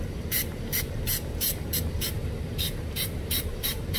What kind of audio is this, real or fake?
fake